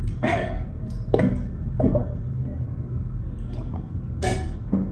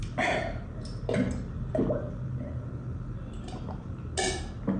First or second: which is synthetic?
first